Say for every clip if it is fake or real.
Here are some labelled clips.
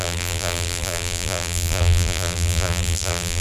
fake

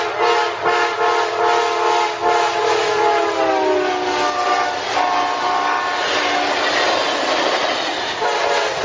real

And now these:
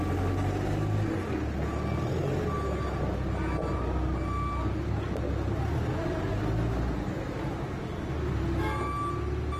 real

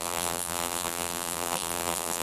fake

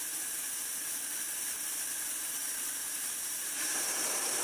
fake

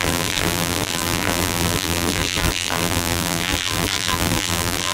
fake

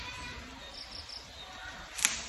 real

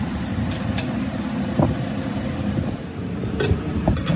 real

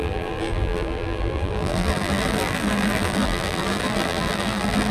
fake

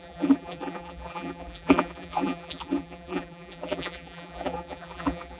fake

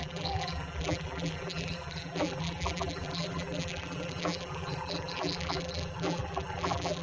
fake